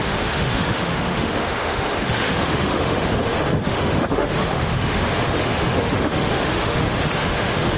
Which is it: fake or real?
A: fake